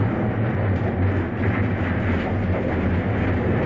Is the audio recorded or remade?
recorded